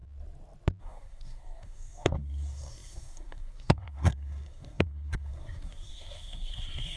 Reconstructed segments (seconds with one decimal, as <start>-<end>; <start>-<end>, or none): 0.8-7.0